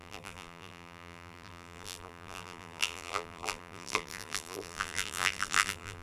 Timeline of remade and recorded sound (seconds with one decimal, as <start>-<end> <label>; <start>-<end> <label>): 0.0-6.0 remade

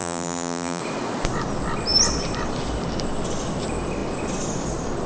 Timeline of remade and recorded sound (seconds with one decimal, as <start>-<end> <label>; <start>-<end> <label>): 0.0-0.8 remade; 0.8-5.1 recorded

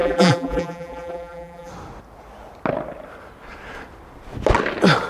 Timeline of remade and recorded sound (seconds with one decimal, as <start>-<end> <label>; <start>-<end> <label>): 0.0-1.7 remade; 1.7-5.1 recorded

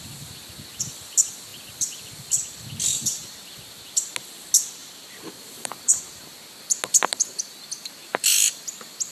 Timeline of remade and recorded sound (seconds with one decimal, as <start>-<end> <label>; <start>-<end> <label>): 0.0-4.8 recorded; 4.8-6.0 remade; 6.0-9.1 recorded

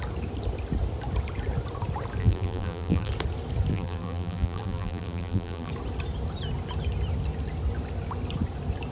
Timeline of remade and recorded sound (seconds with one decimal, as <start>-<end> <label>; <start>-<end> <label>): 0.0-2.2 recorded; 2.2-3.1 remade; 3.1-3.7 recorded; 3.7-5.7 remade; 5.7-8.9 recorded

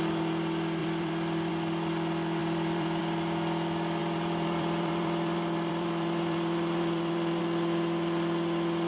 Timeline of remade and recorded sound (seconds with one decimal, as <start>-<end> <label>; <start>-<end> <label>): 0.0-0.8 recorded; 0.8-1.5 remade; 1.5-2.4 recorded; 2.4-3.0 remade; 3.0-4.0 recorded; 4.0-7.4 remade; 7.4-8.9 recorded

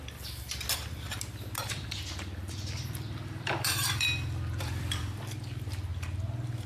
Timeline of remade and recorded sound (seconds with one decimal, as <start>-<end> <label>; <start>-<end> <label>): 0.0-1.6 recorded; 1.6-5.4 remade; 5.4-6.7 recorded

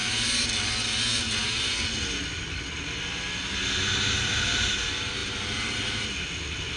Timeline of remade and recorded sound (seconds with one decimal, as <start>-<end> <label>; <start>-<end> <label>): 0.0-0.7 remade; 0.7-5.2 recorded; 5.2-6.0 remade; 6.0-6.8 recorded